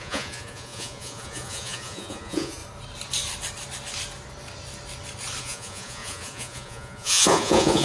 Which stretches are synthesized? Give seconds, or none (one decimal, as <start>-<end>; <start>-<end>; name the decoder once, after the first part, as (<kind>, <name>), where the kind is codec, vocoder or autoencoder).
0.0-2.6 (vocoder, Vocos); 5.4-7.8